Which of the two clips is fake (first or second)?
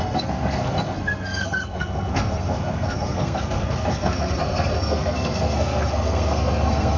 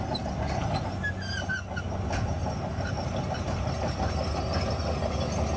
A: first